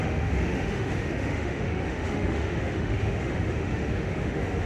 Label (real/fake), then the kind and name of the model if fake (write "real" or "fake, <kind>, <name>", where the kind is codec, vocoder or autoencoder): fake, autoencoder, DAC-VAE